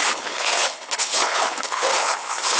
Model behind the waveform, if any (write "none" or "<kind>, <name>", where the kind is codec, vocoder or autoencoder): codec, HILCodec